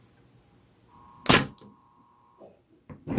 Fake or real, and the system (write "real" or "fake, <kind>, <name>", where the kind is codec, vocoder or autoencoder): real